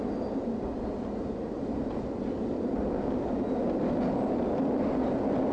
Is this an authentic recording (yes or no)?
yes